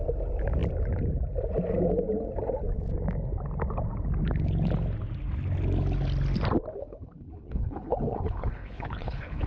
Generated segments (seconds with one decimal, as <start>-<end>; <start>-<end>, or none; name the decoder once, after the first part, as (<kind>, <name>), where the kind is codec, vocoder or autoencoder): 6.7-9.5 (codec, HILCodec)